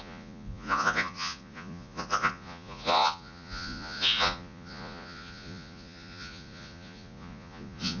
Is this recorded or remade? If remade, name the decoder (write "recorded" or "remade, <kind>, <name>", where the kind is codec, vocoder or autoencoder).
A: remade, vocoder, Vocos